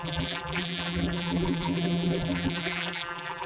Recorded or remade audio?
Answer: remade